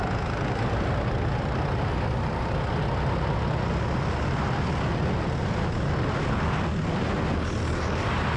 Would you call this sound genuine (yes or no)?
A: yes